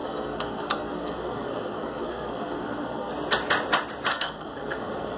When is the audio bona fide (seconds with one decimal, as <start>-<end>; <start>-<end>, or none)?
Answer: 3.1-4.1